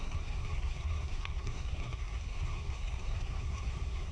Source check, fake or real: fake